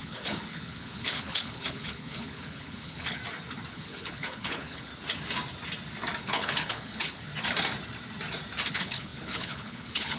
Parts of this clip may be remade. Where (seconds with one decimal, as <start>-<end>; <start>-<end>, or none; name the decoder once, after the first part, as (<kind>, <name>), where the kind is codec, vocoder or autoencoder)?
0.0-3.2 (codec, HILCodec); 3.7-4.9; 6.2-7.3; 8.7-10.2